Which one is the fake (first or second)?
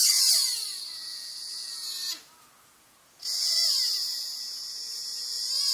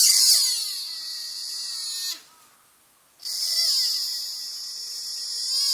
first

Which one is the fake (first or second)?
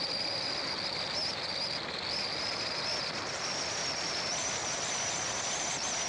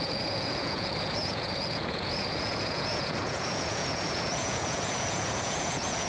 second